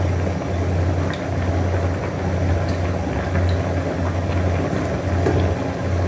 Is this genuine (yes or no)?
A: yes